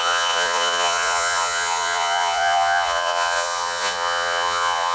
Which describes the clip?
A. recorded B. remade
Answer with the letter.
B